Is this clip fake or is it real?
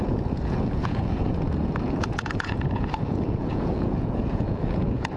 fake